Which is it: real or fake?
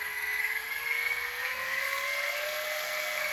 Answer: fake